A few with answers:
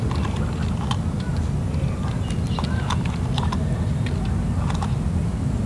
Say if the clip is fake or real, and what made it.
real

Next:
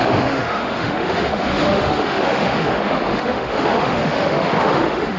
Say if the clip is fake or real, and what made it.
fake, autoencoder, DAC-VAE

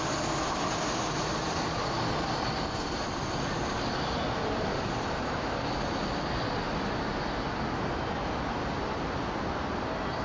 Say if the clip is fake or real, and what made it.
real